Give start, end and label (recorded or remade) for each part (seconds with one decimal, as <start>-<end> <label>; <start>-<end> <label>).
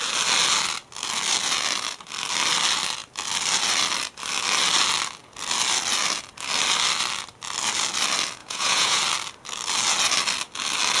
0.0-8.4 recorded; 8.4-9.0 remade; 9.0-11.0 recorded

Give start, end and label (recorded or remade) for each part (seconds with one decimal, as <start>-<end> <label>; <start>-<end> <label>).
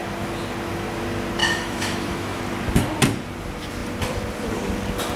0.0-1.4 recorded; 1.4-2.4 remade; 2.4-5.2 recorded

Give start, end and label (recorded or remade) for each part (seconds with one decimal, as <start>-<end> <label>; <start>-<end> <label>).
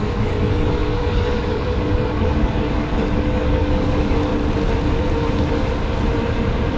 0.0-4.3 remade; 4.3-6.8 recorded